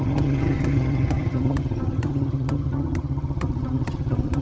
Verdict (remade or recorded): remade